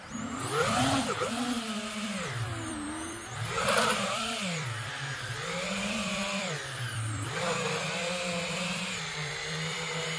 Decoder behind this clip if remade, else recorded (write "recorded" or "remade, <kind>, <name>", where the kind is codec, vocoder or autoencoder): remade, vocoder, BigVGAN v2